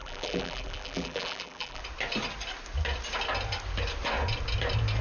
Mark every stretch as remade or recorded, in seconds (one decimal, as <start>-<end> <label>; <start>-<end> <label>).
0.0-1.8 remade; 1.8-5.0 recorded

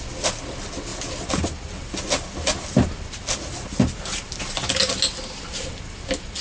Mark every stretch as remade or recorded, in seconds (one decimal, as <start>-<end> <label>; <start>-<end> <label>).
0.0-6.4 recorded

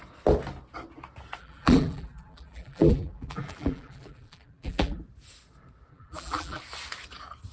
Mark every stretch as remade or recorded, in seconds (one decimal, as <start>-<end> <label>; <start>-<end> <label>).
0.0-1.4 recorded; 1.4-5.0 remade; 5.0-5.9 recorded; 5.9-6.6 remade; 6.6-7.5 recorded

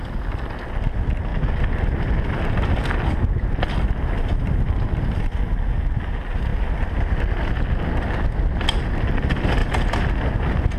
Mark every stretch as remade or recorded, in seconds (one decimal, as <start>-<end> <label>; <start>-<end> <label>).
0.0-10.8 recorded

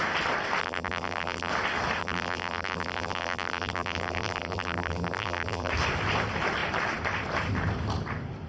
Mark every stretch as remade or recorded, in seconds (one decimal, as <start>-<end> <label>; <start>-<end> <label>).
0.0-0.6 recorded; 0.6-1.5 remade; 1.5-2.0 recorded; 2.0-5.7 remade; 5.7-8.5 recorded

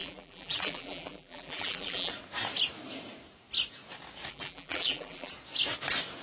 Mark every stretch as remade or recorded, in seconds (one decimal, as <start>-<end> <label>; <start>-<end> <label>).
0.0-2.1 remade; 2.1-4.3 recorded; 4.3-5.3 remade; 5.3-6.2 recorded

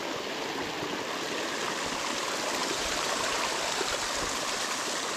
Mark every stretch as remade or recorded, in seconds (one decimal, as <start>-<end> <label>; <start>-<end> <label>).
0.0-2.6 recorded; 2.6-3.4 remade; 3.4-5.2 recorded

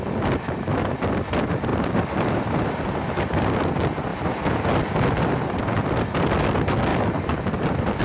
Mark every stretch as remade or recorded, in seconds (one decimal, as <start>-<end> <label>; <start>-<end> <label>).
0.0-1.7 recorded; 1.7-2.7 remade; 2.7-6.9 recorded; 6.9-8.0 remade